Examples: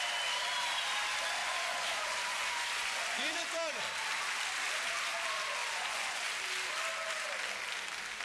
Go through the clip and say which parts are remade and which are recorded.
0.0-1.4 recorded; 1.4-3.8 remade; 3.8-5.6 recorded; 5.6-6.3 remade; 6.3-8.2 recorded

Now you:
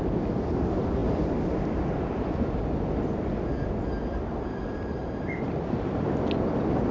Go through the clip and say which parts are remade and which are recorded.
0.0-6.9 recorded

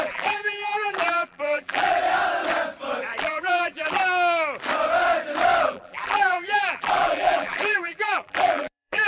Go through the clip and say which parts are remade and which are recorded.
0.0-2.0 remade; 2.0-3.2 recorded; 3.2-4.0 remade; 4.0-5.6 recorded; 5.6-9.1 remade

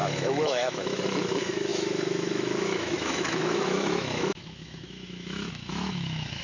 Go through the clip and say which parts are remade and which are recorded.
0.0-6.4 remade

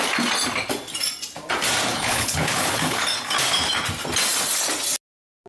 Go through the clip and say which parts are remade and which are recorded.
0.0-1.9 recorded; 1.9-3.0 remade; 3.0-5.5 recorded

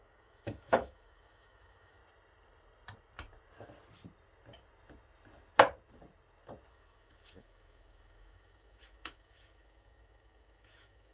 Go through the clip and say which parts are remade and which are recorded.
0.0-2.0 remade; 2.0-6.7 recorded; 6.7-11.1 remade

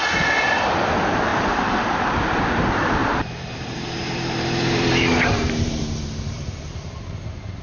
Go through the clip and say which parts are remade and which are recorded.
0.0-0.6 recorded; 0.6-7.6 remade